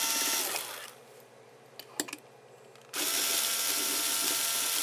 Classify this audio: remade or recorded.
recorded